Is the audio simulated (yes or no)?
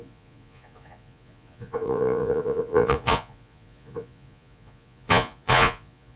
yes